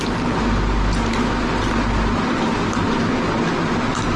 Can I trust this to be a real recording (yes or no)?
yes